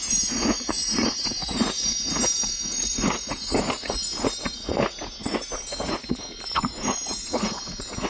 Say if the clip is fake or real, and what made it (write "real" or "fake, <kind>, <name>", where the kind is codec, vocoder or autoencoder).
fake, vocoder, Vocos